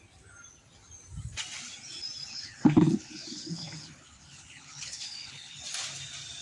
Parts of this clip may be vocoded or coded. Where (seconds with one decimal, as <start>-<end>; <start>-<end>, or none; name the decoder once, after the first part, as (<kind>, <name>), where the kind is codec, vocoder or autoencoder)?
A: 2.3-5.6 (codec, HILCodec)